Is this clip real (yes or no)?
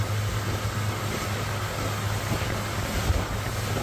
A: yes